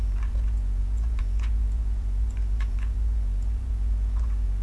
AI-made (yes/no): yes